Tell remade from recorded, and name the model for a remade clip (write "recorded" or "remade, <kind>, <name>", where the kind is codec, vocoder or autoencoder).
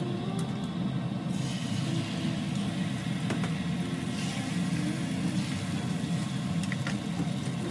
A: recorded